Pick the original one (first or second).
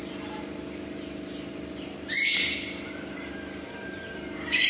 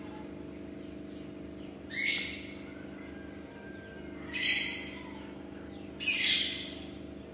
second